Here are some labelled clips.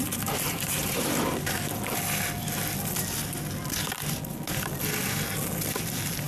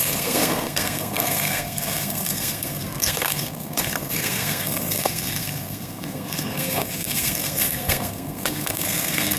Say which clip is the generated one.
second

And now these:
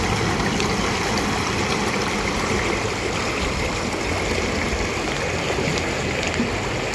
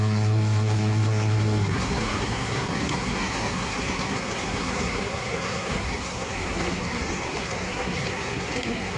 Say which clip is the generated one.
second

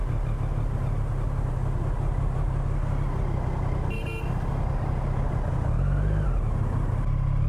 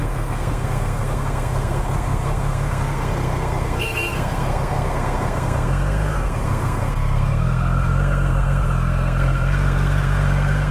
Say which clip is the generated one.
second